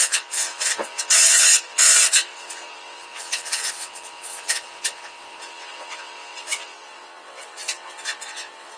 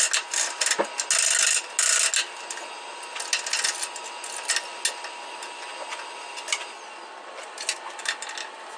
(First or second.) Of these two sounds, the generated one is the first